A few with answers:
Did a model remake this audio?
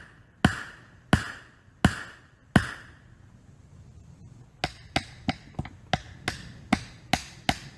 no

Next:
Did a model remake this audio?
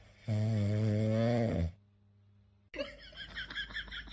no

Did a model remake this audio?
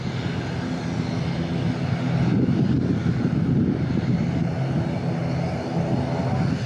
no